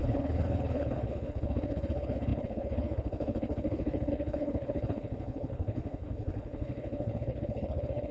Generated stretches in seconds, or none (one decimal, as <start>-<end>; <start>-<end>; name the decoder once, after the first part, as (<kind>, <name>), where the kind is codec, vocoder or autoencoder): 0.0-8.1 (codec, HILCodec)